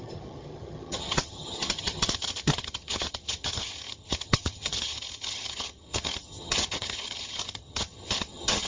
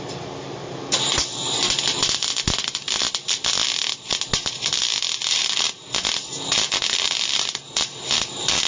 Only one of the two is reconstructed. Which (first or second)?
first